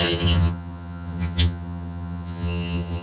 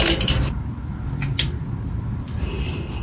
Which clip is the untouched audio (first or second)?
second